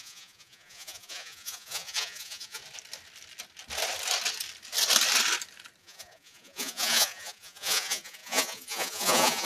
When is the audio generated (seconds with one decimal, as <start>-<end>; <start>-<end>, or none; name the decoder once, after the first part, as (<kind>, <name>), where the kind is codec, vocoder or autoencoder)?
0.0-2.6 (vocoder, Vocos); 5.8-9.5